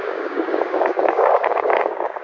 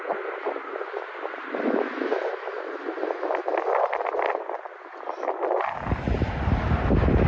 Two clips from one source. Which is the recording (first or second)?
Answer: second